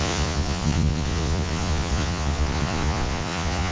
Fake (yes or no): yes